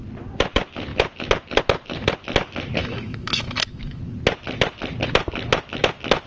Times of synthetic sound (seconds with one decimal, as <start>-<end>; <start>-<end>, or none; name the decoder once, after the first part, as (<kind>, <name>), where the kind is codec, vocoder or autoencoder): 2.8-4.0 (autoencoder, DAC-VAE)